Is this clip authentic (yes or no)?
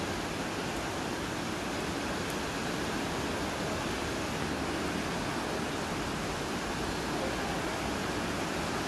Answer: yes